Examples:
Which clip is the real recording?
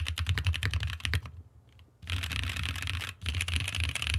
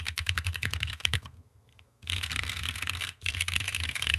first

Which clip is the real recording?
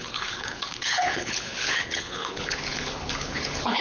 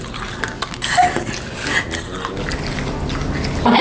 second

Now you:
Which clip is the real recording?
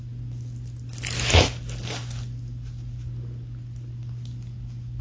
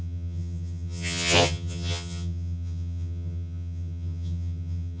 first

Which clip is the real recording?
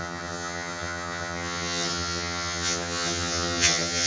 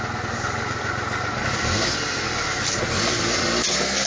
second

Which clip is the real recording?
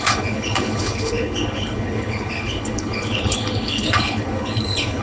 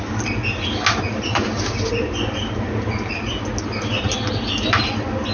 second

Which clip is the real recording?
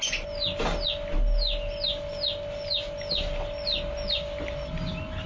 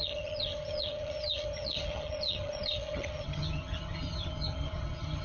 first